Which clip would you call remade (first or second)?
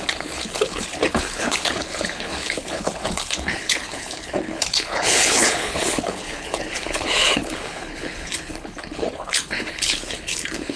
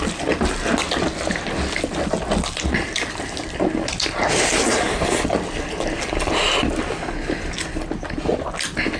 first